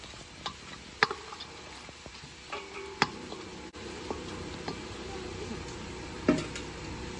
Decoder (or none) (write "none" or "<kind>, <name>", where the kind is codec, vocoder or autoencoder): none